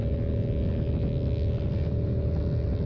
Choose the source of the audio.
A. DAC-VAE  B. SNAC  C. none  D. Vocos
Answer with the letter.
C